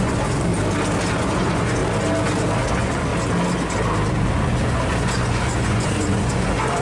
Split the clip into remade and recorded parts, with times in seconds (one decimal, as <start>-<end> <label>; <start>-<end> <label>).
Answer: 0.0-0.5 remade; 0.5-1.2 recorded; 1.2-1.8 remade; 1.8-2.6 recorded; 2.6-3.1 remade; 3.1-4.1 recorded; 4.1-6.8 remade